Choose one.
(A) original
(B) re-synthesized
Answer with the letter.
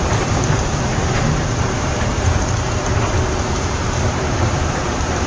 B